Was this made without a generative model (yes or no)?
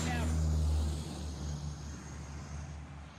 yes